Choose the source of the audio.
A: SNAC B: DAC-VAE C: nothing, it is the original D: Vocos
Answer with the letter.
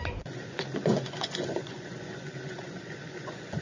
D